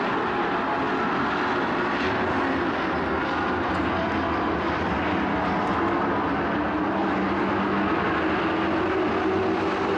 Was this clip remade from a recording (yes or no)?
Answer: no